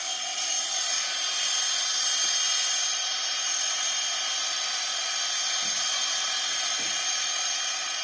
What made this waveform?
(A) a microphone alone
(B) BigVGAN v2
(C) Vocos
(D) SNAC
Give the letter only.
A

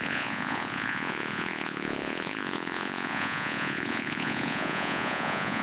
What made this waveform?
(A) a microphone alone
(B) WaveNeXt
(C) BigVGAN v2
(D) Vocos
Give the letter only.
D